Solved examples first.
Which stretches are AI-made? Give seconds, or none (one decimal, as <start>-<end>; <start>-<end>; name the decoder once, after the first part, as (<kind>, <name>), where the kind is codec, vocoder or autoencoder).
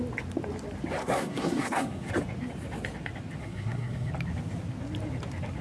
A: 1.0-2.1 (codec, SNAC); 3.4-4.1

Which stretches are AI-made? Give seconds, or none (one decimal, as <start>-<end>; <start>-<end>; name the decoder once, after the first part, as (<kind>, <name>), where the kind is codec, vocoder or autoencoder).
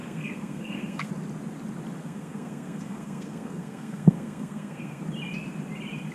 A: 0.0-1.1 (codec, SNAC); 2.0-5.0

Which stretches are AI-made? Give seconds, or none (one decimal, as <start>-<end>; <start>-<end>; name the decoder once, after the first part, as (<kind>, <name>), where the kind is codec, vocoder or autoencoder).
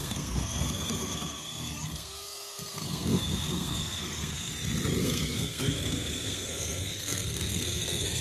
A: 0.0-4.5 (codec, SNAC); 5.0-8.2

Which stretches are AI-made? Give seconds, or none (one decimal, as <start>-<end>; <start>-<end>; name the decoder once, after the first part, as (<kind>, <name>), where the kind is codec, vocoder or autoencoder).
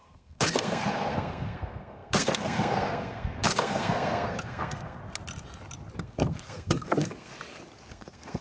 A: 0.0-5.0 (codec, SNAC); 6.0-7.3; 7.9-8.4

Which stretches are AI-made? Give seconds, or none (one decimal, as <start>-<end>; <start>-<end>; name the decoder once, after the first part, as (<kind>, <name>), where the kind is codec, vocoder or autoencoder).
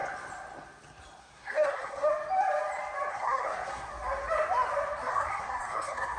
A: 1.2-2.1 (codec, SNAC); 3.1-3.9; 5.1-6.2